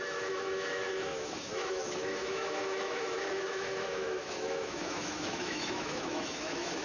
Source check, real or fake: fake